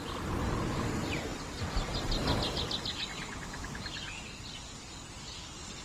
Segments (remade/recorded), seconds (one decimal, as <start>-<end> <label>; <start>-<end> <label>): 0.0-1.3 recorded; 1.3-4.8 remade; 4.8-5.8 recorded